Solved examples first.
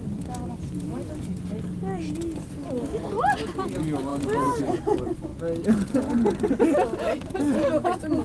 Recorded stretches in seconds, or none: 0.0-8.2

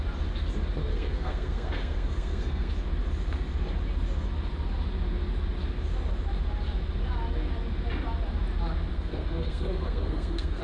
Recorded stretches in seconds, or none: 0.0-0.9; 2.7-8.9

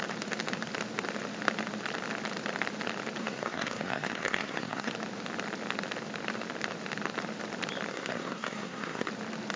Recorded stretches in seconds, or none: 0.0-3.2; 4.9-7.9; 9.1-9.6

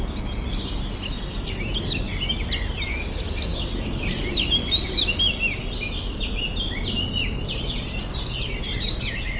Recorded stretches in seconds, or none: 0.0-9.4

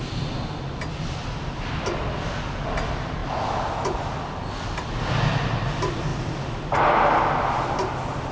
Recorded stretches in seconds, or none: 0.0-8.3